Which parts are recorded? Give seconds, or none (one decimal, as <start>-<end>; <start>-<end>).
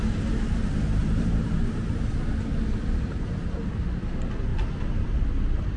0.0-1.0; 2.1-4.5; 5.2-5.8